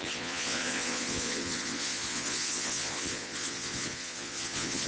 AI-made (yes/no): yes